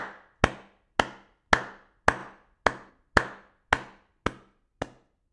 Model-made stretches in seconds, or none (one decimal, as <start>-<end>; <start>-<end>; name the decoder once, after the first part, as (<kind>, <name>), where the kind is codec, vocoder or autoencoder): none